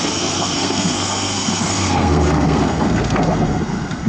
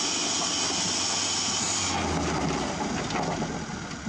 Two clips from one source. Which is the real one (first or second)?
second